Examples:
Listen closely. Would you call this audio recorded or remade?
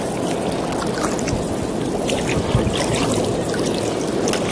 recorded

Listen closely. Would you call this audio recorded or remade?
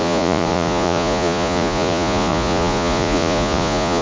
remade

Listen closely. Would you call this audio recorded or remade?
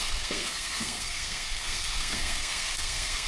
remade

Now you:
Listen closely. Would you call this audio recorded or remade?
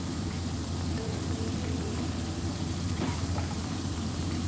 remade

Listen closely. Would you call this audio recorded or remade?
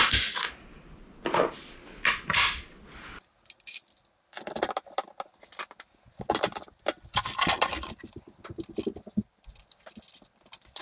recorded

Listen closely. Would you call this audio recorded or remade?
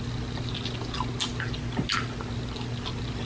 recorded